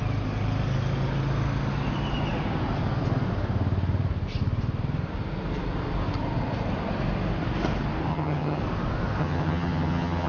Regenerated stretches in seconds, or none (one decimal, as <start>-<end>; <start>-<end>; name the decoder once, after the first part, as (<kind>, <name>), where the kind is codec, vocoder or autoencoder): 8.1-8.6 (vocoder, HiFi-GAN); 9.2-10.3